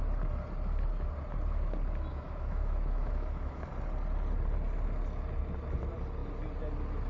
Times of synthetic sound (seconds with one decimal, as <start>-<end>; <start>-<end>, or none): 2.1-3.7